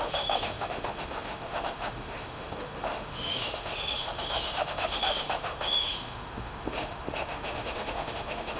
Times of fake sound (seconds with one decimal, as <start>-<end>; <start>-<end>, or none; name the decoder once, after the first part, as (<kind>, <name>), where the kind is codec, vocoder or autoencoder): 0.0-8.6 (autoencoder, DAC-VAE)